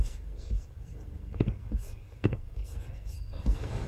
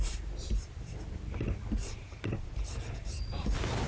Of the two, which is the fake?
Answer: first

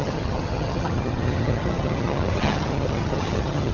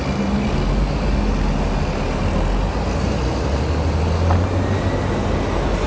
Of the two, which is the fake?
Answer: first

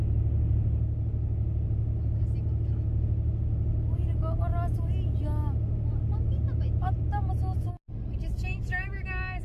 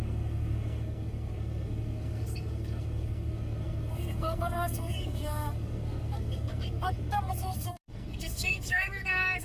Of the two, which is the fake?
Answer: second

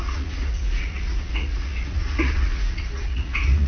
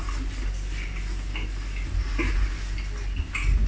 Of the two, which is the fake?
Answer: first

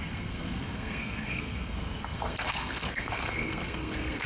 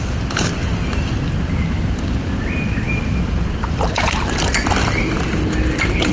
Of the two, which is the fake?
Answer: first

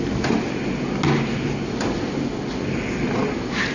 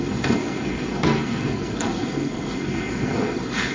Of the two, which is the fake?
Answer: second